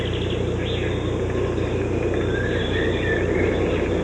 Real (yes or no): yes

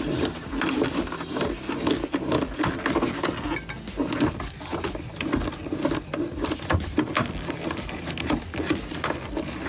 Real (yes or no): yes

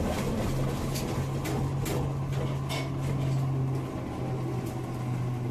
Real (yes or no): yes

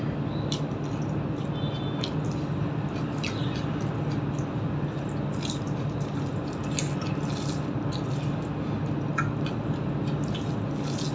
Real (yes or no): yes